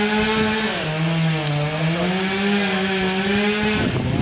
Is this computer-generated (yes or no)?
no